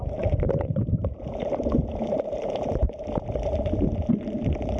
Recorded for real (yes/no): yes